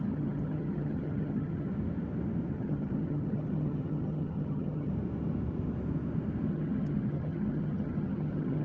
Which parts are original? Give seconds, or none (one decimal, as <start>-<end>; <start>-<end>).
1.7-2.5; 4.9-6.5